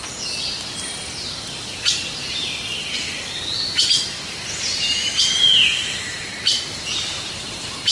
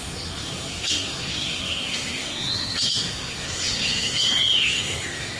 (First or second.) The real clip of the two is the first